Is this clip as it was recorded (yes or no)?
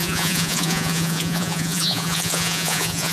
no